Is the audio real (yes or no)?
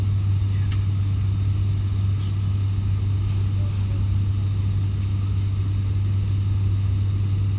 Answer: yes